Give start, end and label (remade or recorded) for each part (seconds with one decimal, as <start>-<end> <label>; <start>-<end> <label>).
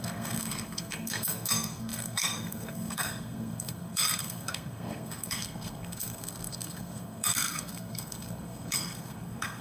0.0-9.6 remade